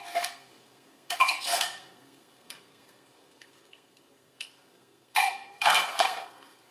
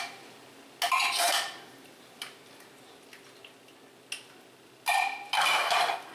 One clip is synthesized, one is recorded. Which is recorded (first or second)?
second